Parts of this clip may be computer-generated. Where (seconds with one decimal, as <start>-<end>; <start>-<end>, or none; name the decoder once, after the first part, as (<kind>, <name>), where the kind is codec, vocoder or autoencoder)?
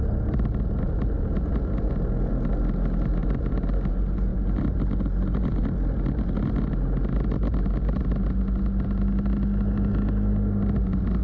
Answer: 3.2-3.9 (vocoder, BigVGAN v2)